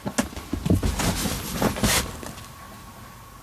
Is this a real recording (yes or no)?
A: yes